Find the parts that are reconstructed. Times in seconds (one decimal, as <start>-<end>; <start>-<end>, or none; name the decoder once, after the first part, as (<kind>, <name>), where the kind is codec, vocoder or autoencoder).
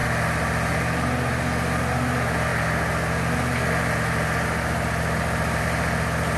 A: none